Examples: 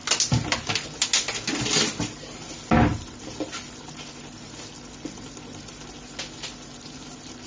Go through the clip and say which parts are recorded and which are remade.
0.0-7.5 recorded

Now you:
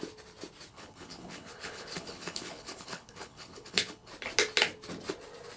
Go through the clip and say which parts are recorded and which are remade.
0.0-0.7 recorded; 0.7-4.1 remade; 4.1-5.6 recorded

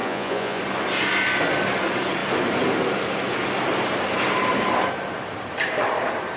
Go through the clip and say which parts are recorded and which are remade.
0.0-0.6 remade; 0.6-6.4 recorded

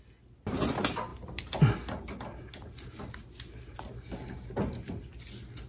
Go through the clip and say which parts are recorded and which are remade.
0.0-5.7 recorded

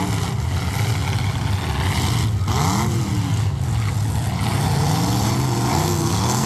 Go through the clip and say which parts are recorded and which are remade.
0.0-5.7 recorded; 5.7-6.5 remade